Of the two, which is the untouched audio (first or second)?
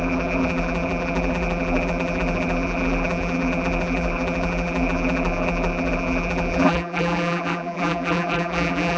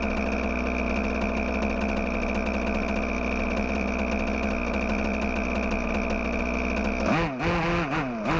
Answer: second